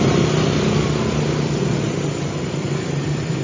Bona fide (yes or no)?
yes